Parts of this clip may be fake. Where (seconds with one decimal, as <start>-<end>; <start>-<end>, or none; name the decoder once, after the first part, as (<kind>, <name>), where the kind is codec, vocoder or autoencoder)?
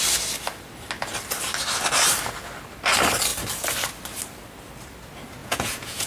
5.4-6.1 (vocoder, Vocos)